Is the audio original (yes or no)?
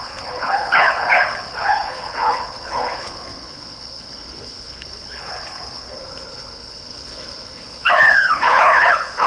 no